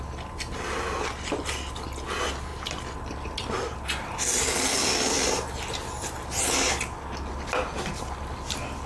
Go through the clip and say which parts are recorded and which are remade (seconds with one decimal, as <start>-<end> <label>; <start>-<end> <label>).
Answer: 0.0-8.9 recorded